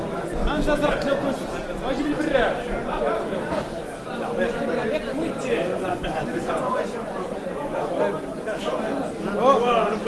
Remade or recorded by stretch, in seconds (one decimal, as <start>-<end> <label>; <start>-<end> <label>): 0.0-5.7 recorded; 5.7-7.9 remade; 7.9-10.1 recorded